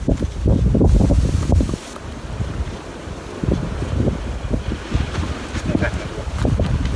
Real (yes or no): yes